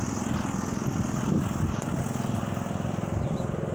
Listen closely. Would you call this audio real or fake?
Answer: real